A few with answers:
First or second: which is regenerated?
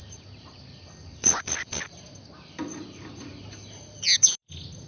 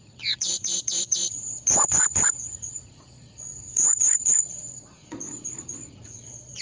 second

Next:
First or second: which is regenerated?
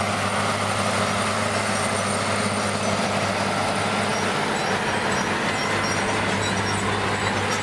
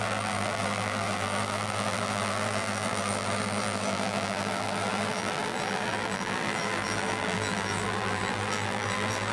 second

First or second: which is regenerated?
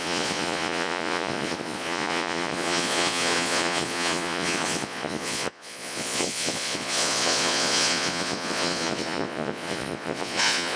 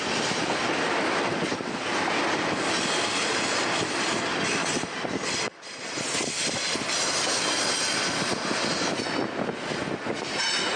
first